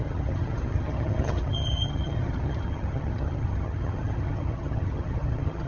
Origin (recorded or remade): remade